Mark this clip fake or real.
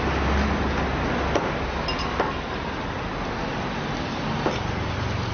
real